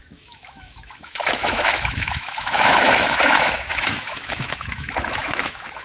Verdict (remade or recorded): remade